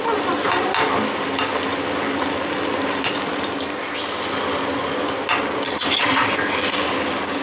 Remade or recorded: recorded